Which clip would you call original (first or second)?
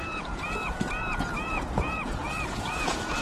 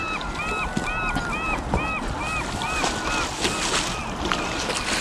second